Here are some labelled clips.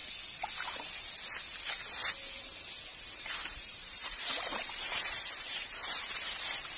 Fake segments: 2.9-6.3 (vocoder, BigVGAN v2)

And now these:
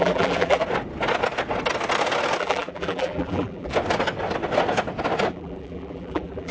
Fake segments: 0.0-0.6 (vocoder, BigVGAN v2); 2.4-3.7; 5.3-6.5